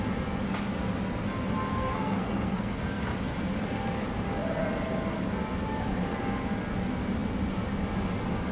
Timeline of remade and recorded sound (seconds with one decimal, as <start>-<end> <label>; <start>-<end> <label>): 0.0-1.7 recorded; 1.7-3.0 remade; 3.0-8.5 recorded